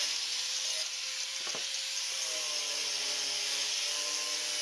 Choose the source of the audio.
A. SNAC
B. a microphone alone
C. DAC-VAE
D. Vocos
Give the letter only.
B